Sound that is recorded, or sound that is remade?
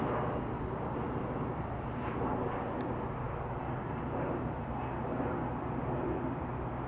recorded